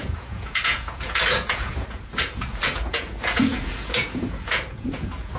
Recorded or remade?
remade